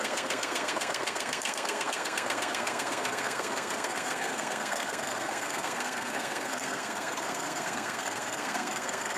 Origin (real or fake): fake